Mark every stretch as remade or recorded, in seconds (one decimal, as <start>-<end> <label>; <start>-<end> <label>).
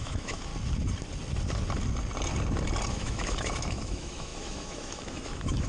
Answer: 0.0-0.5 remade; 0.5-2.9 recorded; 2.9-5.7 remade